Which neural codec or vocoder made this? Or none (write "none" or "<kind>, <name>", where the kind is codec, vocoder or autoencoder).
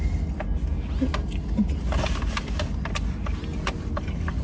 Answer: none